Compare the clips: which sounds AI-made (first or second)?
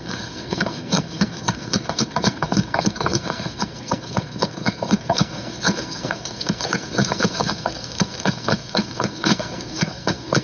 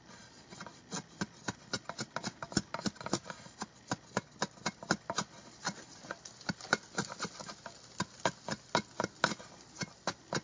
first